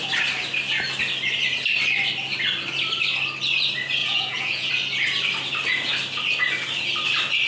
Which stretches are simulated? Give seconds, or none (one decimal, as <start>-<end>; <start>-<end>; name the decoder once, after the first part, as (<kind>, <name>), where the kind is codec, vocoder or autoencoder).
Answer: 4.0-4.7 (vocoder, Vocos)